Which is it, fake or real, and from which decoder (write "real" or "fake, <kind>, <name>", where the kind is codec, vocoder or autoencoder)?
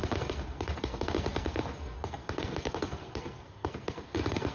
fake, codec, SNAC